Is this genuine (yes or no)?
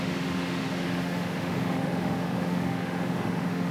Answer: no